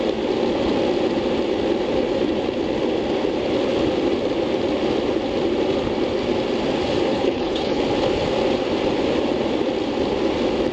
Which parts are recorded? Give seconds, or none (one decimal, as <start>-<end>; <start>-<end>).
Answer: 0.0-7.1; 7.8-10.7